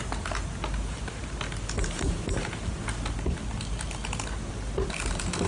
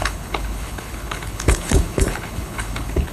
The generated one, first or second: second